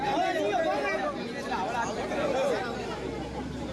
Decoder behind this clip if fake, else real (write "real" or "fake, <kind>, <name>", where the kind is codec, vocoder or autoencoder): real